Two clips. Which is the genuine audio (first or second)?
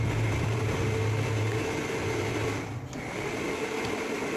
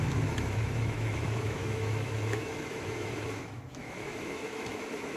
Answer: first